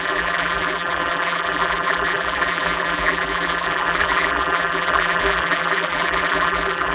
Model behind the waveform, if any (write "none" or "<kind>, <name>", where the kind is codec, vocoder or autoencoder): vocoder, BigVGAN v2